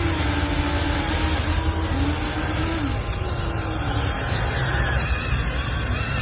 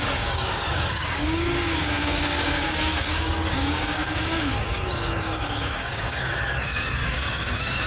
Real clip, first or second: first